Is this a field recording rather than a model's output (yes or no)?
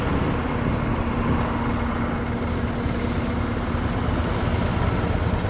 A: yes